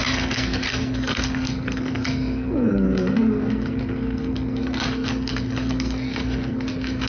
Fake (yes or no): yes